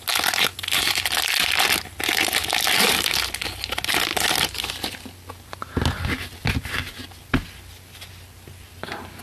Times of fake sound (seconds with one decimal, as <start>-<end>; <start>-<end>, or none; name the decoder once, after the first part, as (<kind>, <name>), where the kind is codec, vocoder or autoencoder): none